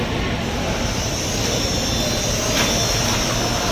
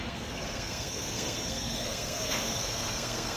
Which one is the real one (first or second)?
first